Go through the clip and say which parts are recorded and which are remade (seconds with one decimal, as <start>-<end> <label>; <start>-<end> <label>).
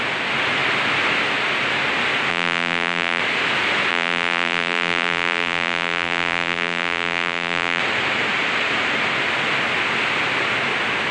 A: 0.0-2.3 recorded; 2.3-3.2 remade; 3.2-3.9 recorded; 3.9-7.8 remade; 7.8-11.1 recorded